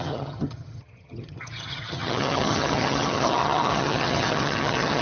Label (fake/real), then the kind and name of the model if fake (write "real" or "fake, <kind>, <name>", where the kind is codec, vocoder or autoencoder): fake, vocoder, HiFi-GAN